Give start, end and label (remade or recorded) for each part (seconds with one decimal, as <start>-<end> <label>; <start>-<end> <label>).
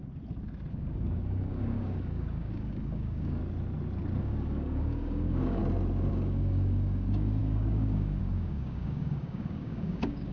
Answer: 0.0-0.7 recorded; 0.7-3.4 remade; 3.4-4.2 recorded; 4.2-5.6 remade; 5.6-6.1 recorded; 6.1-10.3 remade